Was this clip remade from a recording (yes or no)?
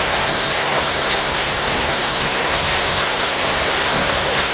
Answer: yes